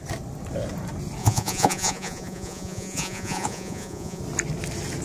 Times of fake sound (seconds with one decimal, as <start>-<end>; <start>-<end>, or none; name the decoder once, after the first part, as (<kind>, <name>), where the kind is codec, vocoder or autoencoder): 1.2-4.2 (vocoder, Vocos)